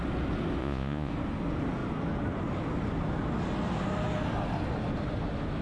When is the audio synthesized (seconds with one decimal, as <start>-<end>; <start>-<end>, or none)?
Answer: 0.6-1.1